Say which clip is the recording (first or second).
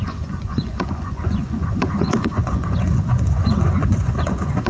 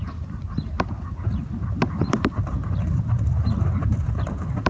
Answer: second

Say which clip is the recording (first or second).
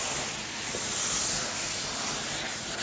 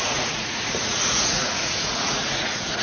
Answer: first